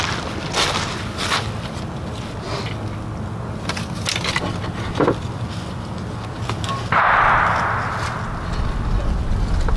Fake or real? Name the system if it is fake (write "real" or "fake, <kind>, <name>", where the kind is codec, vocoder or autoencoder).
real